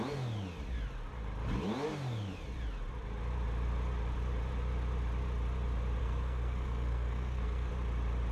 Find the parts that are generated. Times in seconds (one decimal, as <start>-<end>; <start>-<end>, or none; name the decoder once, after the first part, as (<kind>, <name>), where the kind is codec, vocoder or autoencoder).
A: 6.0-7.7 (codec, SNAC)